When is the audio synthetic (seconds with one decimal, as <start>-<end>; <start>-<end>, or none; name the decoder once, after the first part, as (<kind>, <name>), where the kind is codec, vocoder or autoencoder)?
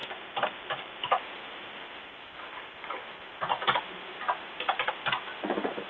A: 0.0-3.0 (vocoder, BigVGAN v2)